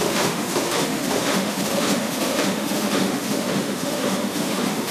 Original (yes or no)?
no